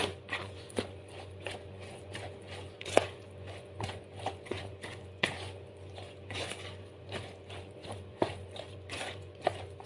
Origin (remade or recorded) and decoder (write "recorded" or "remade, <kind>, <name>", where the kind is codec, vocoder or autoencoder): remade, vocoder, Vocos